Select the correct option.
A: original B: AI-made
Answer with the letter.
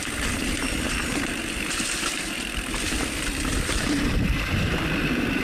B